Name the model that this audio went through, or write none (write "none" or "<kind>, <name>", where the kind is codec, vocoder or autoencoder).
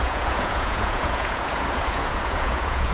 vocoder, Vocos